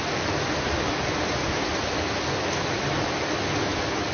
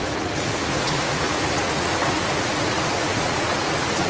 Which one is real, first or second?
first